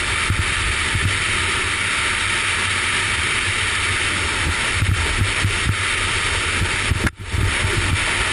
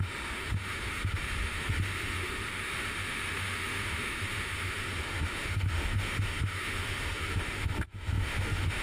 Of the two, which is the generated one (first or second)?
second